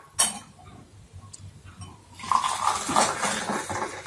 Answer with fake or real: real